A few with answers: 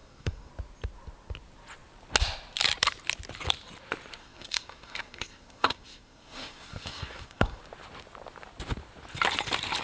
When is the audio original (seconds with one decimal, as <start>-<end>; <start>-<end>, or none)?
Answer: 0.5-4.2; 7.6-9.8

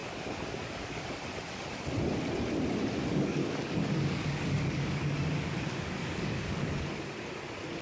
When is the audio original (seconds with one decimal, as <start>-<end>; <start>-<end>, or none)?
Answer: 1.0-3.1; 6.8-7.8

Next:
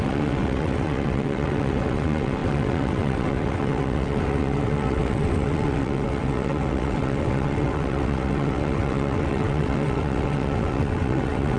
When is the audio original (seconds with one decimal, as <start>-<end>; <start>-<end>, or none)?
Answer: none

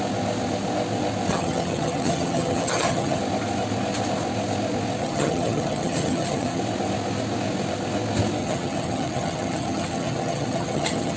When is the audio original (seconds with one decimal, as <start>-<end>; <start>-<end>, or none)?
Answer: 0.0-1.3; 3.2-5.0; 6.6-8.4